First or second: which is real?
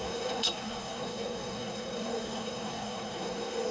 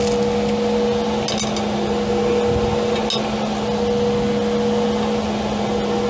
second